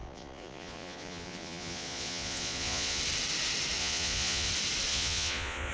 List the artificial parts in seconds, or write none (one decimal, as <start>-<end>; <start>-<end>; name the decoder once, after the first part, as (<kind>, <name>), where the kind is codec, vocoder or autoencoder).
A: 0.0-3.0 (vocoder, Vocos); 3.8-4.5; 4.9-5.7